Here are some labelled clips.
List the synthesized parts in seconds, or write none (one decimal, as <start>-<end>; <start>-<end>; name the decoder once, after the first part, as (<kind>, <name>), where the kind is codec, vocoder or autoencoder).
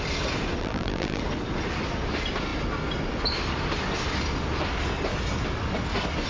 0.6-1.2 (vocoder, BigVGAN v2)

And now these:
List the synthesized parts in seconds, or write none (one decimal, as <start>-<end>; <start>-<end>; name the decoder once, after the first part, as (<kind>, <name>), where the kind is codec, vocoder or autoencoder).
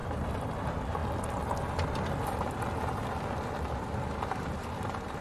0.0-1.0 (vocoder, BigVGAN v2); 4.1-5.2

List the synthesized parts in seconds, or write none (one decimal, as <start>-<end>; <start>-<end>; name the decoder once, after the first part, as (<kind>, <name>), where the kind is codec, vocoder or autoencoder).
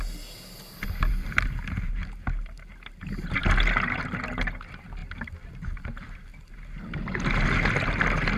1.1-2.5 (vocoder, BigVGAN v2)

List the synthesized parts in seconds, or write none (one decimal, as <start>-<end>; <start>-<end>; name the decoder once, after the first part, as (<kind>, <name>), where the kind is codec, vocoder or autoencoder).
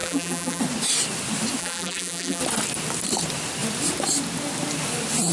0.0-0.6 (vocoder, BigVGAN v2); 1.6-2.4